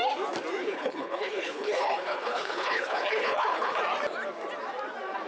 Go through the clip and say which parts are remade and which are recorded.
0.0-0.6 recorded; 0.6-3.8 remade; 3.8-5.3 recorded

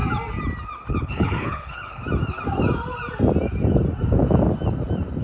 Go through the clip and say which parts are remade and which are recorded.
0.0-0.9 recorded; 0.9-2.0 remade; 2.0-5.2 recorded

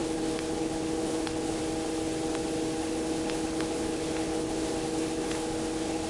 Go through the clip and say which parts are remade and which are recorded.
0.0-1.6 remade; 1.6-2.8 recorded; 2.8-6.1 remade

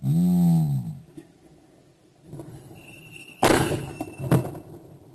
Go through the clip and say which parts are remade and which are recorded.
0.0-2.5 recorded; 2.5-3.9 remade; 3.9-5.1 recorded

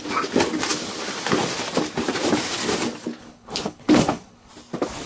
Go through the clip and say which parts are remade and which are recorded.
0.0-3.2 recorded; 3.2-4.5 remade; 4.5-5.1 recorded

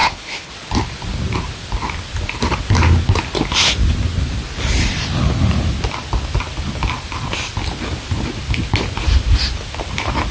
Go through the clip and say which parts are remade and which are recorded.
0.0-0.5 remade; 0.5-10.3 recorded

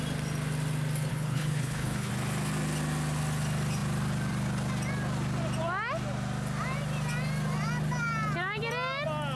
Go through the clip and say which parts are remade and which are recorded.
0.0-1.1 recorded; 1.1-2.1 remade; 2.1-9.4 recorded